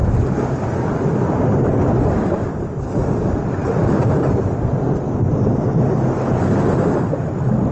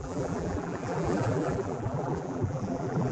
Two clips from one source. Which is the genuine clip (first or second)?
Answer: first